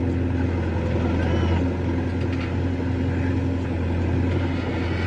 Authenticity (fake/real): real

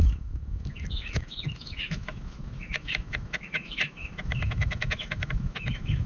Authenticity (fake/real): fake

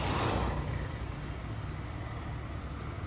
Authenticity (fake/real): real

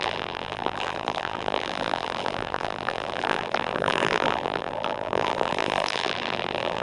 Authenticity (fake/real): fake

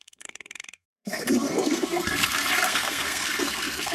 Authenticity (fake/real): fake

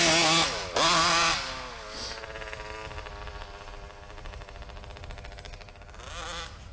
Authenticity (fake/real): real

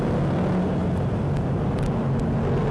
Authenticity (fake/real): real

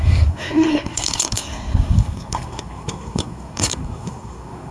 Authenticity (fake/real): fake